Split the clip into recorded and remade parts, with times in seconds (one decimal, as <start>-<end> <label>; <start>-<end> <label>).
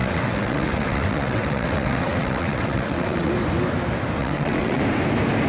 0.0-3.3 remade; 3.3-4.2 recorded; 4.2-4.8 remade; 4.8-5.5 recorded